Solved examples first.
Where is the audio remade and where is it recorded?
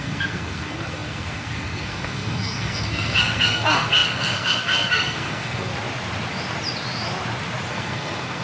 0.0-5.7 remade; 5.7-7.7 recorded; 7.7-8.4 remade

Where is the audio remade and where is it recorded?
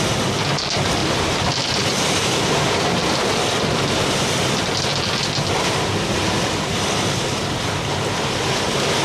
0.0-9.0 recorded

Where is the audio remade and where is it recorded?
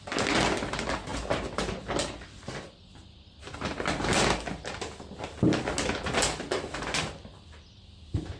0.0-8.4 recorded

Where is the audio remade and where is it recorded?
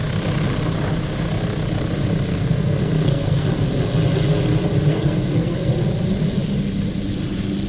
0.0-2.3 recorded; 2.3-3.8 remade; 3.8-4.9 recorded; 4.9-5.7 remade; 5.7-7.7 recorded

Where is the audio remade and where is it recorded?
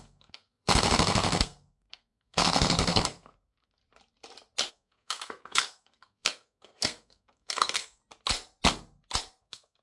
0.0-3.8 remade; 3.8-4.7 recorded; 4.7-8.0 remade; 8.0-9.4 recorded; 9.4-9.8 remade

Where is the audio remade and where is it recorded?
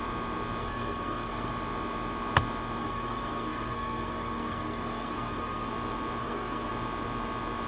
0.0-0.6 recorded; 0.6-1.5 remade; 1.5-2.8 recorded; 2.8-5.7 remade; 5.7-6.2 recorded; 6.2-6.7 remade; 6.7-7.7 recorded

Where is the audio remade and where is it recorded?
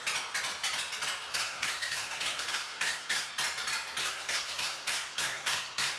0.0-1.3 recorded; 1.3-3.3 remade; 3.3-4.0 recorded; 4.0-6.0 remade